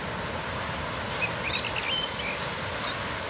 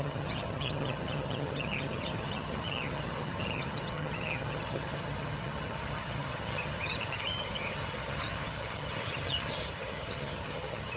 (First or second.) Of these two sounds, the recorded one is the first